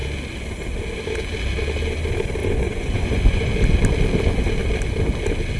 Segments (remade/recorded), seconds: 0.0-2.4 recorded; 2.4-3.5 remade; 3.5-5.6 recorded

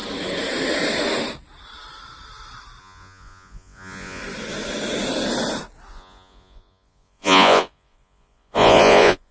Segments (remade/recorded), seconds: 0.0-2.8 recorded; 2.8-4.2 remade; 4.2-5.9 recorded; 5.9-9.3 remade

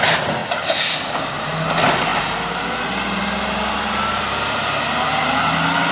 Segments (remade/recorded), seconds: 0.0-5.9 recorded

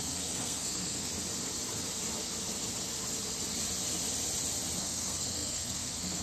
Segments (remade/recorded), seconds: 0.0-1.1 remade; 1.1-4.8 recorded; 4.8-6.2 remade